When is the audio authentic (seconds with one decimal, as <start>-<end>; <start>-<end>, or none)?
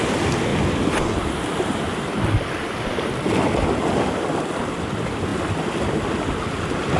0.0-7.0